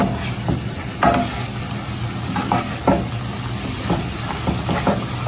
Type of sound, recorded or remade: recorded